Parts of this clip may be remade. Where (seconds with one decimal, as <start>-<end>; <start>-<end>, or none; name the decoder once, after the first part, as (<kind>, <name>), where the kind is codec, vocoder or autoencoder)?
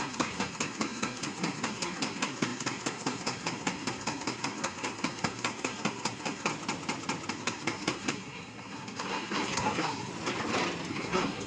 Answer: 0.0-6.5 (codec, SNAC); 7.3-10.1; 10.9-11.5